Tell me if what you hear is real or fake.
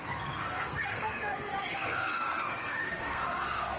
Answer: fake